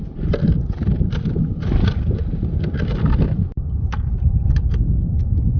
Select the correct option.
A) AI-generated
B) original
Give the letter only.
B